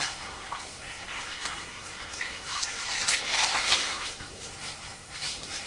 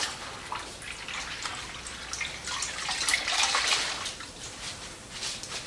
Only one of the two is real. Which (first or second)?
second